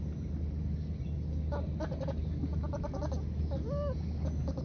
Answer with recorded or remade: recorded